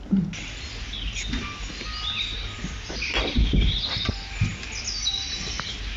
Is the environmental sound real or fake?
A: real